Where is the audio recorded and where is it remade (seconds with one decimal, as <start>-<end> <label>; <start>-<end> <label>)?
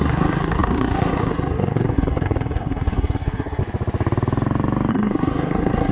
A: 0.0-3.6 remade; 3.6-4.9 recorded; 4.9-5.9 remade